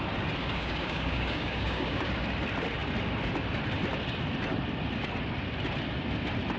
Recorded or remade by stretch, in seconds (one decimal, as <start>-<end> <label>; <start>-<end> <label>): 0.0-0.4 recorded; 0.4-2.1 remade; 2.1-6.6 recorded